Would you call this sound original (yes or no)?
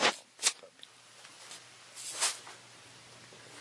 yes